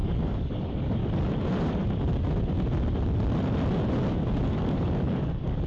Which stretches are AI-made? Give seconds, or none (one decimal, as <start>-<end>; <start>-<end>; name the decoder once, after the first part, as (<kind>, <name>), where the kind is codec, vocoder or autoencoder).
0.0-1.0 (codec, DAC); 4.4-5.7